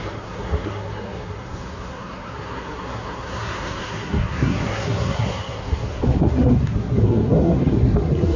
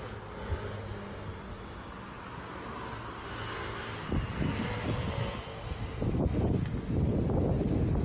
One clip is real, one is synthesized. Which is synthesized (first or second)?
first